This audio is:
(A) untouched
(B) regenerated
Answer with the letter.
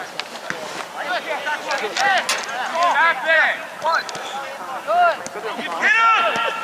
A